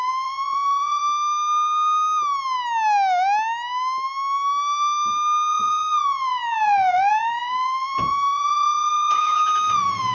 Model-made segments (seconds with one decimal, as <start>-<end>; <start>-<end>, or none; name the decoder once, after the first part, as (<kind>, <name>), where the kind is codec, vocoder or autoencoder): 0.0-1.0 (vocoder, Vocos); 5.5-10.1